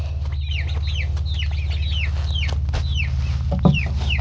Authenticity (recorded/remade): recorded